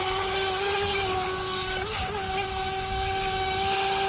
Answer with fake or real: fake